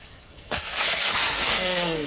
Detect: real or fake fake